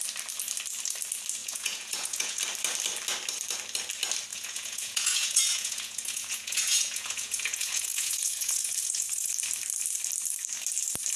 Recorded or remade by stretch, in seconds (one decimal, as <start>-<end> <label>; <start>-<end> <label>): 0.0-1.4 recorded; 1.4-2.4 remade; 2.4-4.3 recorded; 4.3-9.3 remade; 9.3-11.2 recorded